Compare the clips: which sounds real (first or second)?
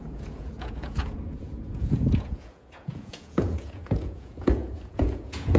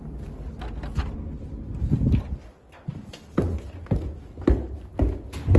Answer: second